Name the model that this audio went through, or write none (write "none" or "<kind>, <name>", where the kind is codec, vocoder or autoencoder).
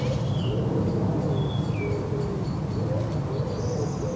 none